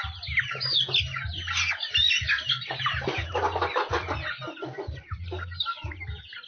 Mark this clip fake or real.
real